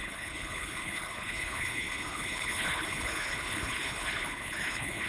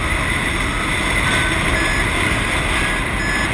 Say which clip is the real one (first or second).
second